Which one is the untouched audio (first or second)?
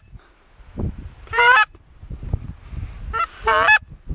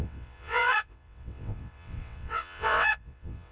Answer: first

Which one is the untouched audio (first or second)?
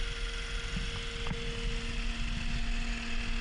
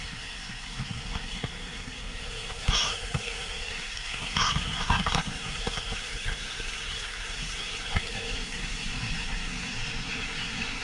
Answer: first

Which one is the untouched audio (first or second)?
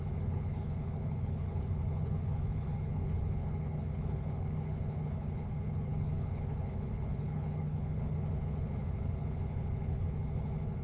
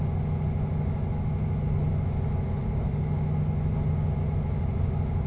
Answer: second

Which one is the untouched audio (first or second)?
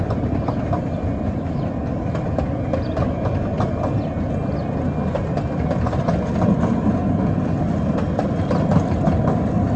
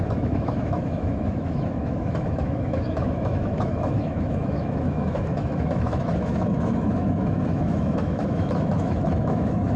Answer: first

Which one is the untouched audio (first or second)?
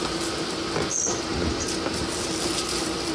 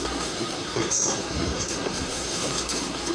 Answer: first